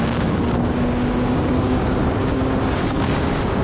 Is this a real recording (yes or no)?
no